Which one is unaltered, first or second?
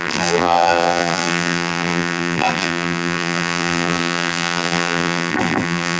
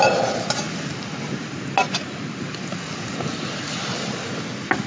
second